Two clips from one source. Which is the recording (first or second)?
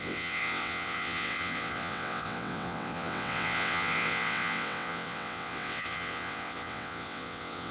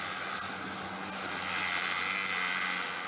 second